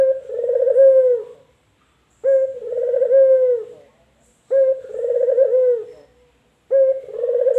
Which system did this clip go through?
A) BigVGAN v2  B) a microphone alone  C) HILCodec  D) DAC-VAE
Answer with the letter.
B